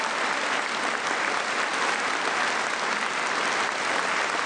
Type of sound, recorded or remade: recorded